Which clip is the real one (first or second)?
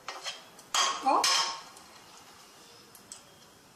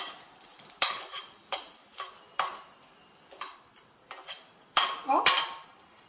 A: first